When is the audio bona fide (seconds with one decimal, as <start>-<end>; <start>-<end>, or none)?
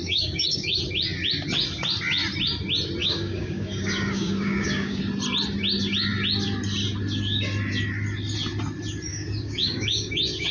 0.8-3.0; 5.0-9.1